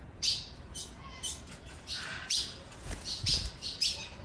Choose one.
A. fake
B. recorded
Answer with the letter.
A